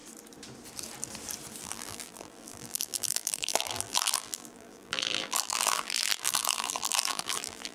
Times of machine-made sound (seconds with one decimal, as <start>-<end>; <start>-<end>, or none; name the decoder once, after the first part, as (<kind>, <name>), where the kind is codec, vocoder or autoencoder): 1.6-7.7 (vocoder, BigVGAN v2)